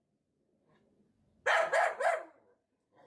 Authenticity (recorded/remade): recorded